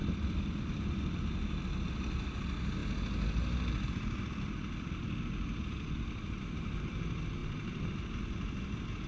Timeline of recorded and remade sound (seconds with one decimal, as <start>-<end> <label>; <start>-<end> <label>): 0.0-1.2 remade; 1.2-7.4 recorded; 7.4-8.2 remade; 8.2-9.1 recorded

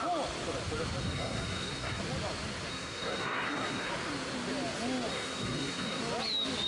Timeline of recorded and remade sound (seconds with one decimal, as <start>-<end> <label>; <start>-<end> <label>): 0.0-1.0 recorded; 1.0-2.0 remade; 2.0-2.7 recorded; 2.7-3.9 remade; 3.9-5.1 recorded; 5.1-6.0 remade; 6.0-6.7 recorded

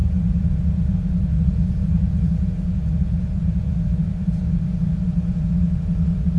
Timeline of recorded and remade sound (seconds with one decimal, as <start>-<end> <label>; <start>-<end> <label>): 0.0-6.4 recorded